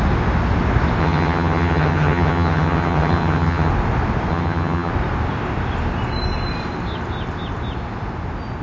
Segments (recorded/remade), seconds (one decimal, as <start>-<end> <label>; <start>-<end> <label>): 0.0-1.0 recorded; 1.0-3.7 remade; 3.7-4.3 recorded; 4.3-4.9 remade; 4.9-8.6 recorded